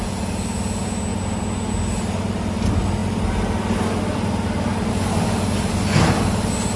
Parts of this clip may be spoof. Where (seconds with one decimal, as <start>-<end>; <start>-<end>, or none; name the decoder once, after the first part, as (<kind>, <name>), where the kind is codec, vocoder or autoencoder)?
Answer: none